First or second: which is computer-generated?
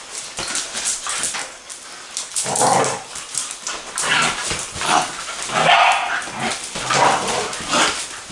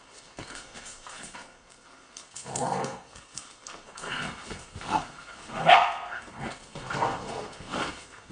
second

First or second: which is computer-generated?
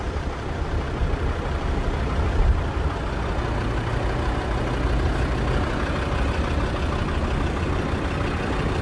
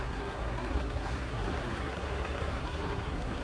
second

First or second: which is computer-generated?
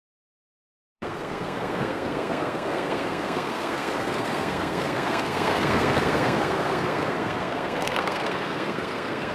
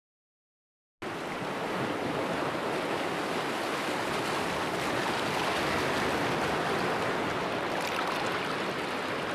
first